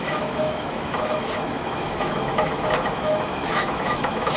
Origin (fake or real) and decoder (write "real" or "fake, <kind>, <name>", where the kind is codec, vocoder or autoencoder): fake, autoencoder, DAC-VAE